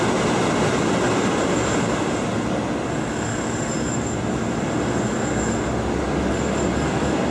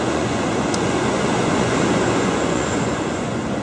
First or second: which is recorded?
first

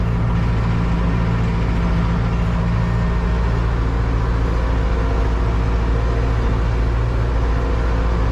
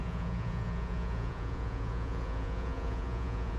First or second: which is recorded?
first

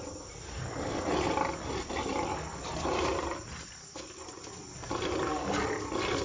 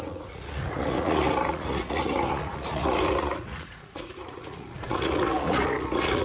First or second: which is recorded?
first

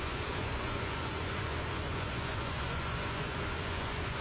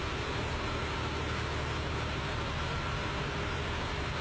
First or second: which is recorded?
second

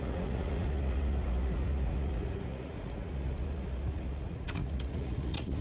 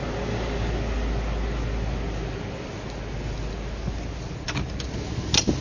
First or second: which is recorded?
second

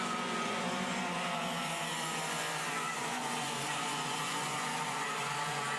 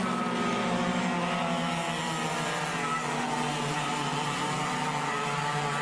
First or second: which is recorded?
second